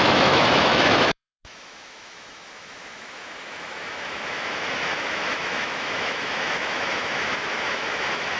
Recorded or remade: remade